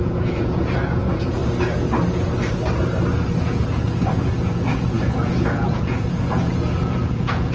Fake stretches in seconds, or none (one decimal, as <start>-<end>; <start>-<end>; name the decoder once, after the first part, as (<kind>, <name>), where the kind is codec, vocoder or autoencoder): 0.0-1.4 (vocoder, Vocos); 3.4-7.5